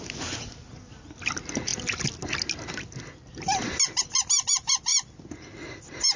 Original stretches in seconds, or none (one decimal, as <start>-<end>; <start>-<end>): 0.0-6.2